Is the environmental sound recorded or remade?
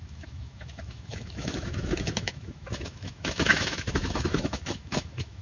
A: remade